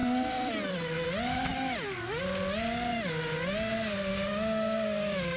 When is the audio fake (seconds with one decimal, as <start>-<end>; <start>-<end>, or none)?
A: 4.1-5.4